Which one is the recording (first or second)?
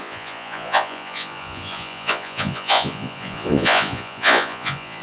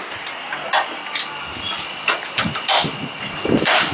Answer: second